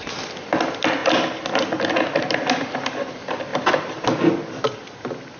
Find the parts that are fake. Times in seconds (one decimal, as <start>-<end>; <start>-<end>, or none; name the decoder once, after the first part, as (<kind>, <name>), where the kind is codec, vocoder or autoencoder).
none